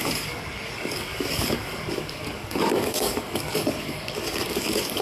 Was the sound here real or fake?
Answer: fake